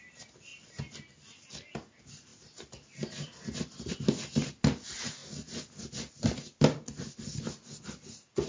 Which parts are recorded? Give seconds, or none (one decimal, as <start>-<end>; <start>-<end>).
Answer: 0.0-8.5